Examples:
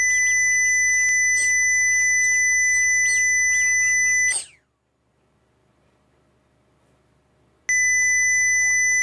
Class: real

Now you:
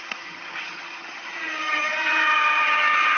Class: fake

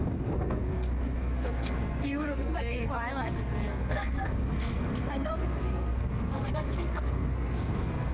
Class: fake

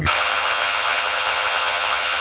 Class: fake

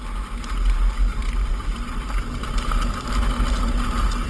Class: real